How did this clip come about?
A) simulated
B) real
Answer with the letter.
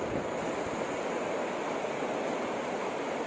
B